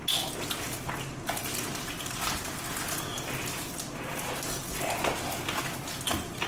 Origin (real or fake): real